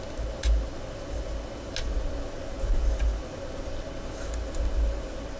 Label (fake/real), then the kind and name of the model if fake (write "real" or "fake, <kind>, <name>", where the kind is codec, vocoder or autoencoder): real